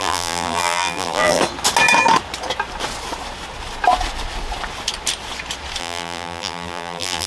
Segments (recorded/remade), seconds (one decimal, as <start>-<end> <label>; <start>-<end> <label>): 0.0-1.4 remade; 1.4-5.8 recorded; 5.8-7.3 remade